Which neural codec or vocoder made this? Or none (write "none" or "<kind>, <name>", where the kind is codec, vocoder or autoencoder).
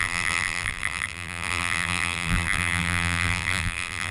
vocoder, BigVGAN v2